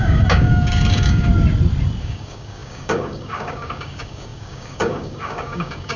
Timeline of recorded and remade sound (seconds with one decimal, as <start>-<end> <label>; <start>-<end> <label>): 0.0-1.3 remade; 1.3-2.0 recorded; 2.0-6.0 remade